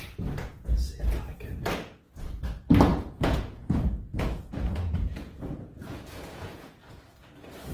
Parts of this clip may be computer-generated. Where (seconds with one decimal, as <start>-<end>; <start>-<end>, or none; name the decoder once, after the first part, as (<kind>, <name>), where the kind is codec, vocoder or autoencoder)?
2.9-7.0 (vocoder, Vocos)

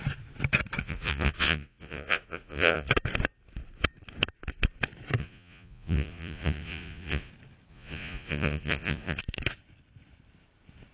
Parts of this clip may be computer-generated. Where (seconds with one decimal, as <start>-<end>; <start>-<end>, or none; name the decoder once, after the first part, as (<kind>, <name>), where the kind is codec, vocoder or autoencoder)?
0.8-2.9 (vocoder, Vocos); 5.2-7.3; 7.7-9.2

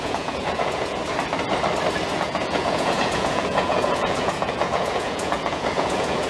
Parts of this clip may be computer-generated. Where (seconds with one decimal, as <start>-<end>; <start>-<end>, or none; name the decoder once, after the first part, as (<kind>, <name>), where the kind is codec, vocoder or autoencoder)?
0.0-1.0 (vocoder, Vocos); 2.1-6.3

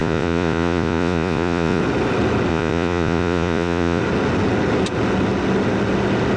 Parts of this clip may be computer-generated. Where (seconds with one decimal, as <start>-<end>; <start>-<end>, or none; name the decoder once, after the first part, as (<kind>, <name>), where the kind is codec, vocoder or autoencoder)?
0.0-1.8 (vocoder, Vocos); 2.5-4.0

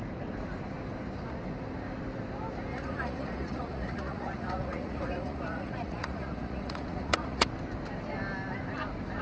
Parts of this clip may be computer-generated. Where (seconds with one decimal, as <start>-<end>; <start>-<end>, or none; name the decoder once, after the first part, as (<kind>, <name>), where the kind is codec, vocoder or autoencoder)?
2.7-7.5 (vocoder, Vocos)

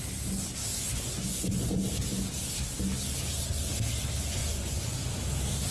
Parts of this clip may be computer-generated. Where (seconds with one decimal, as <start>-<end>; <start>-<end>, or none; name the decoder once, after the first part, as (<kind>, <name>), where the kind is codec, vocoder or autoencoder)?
0.7-1.8 (vocoder, Vocos); 4.4-5.1

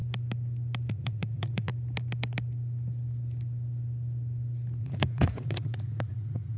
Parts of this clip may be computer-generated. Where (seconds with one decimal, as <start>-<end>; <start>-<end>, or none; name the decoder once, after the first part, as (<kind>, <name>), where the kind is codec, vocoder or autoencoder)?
0.9-1.7 (vocoder, Vocos); 4.8-6.6

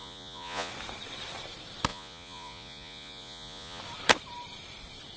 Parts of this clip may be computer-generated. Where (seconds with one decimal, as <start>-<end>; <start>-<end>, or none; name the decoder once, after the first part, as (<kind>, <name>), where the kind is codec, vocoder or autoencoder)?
0.0-0.7 (vocoder, Vocos); 1.9-3.8